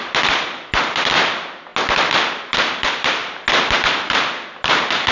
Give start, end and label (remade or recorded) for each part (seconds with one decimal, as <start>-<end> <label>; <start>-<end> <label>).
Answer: 0.0-1.7 remade; 1.7-2.3 recorded; 2.3-3.2 remade; 3.2-4.1 recorded; 4.1-5.1 remade